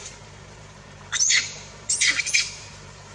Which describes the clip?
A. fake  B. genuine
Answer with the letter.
A